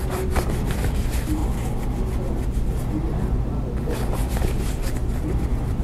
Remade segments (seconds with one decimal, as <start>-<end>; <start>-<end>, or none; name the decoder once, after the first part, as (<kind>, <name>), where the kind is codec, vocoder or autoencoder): 0.0-1.4 (vocoder, BigVGAN v2); 4.9-5.8